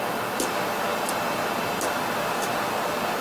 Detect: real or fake real